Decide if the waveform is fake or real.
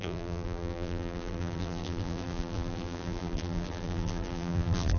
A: fake